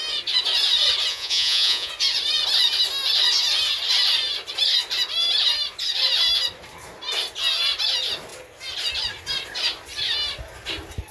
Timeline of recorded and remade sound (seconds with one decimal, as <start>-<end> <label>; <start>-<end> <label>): 0.0-1.1 recorded; 1.1-1.9 remade; 1.9-11.1 recorded